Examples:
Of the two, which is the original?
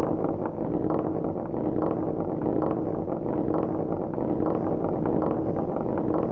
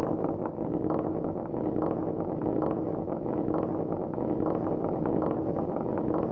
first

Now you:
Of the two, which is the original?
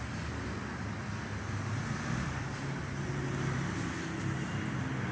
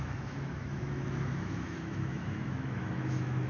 first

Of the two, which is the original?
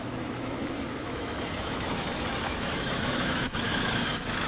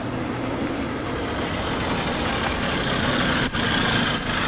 second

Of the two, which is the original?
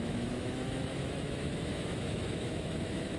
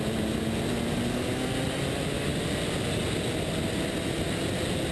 second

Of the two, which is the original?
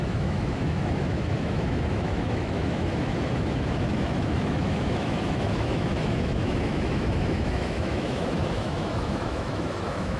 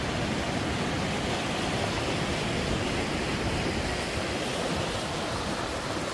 second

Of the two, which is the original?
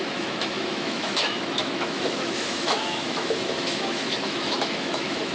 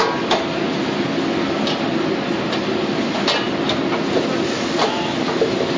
second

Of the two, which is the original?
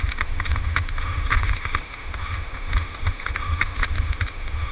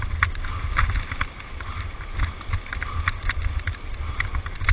second